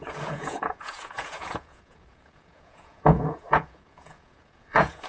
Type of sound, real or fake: fake